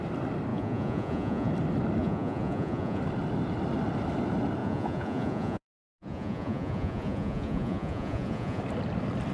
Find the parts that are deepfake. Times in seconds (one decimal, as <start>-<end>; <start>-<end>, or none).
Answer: 0.5-1.5; 2.0-3.0; 4.6-8.6